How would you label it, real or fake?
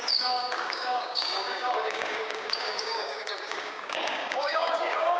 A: fake